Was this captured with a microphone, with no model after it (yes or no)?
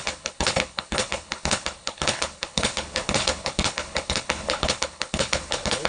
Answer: no